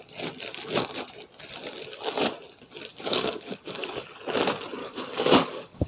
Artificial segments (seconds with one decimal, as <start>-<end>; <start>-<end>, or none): 2.9-4.1; 4.8-5.9